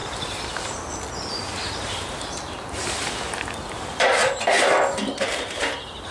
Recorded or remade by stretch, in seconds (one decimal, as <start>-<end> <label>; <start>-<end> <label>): 0.0-3.7 recorded; 3.7-6.1 remade